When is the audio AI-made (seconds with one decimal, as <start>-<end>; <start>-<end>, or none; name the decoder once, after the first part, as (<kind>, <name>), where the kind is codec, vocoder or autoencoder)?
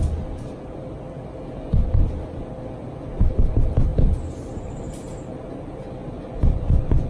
6.0-7.1 (vocoder, Vocos)